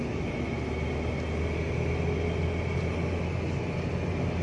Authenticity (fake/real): real